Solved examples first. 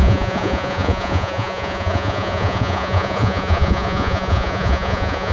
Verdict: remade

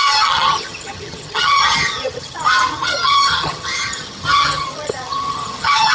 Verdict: remade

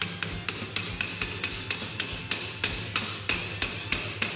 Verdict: recorded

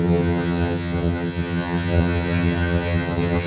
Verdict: remade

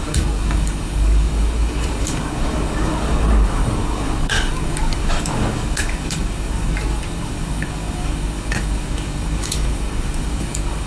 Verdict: remade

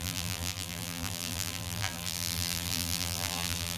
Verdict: remade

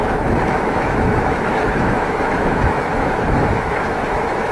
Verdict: remade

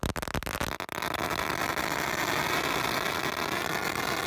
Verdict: recorded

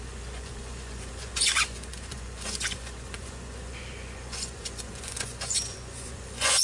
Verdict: remade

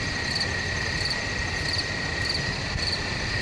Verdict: recorded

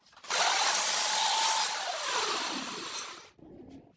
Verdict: recorded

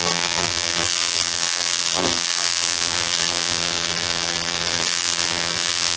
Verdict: remade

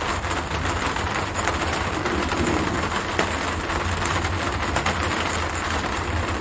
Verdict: recorded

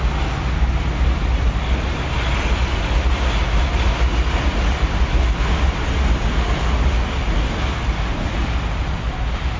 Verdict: recorded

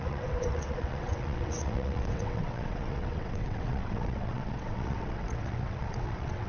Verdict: remade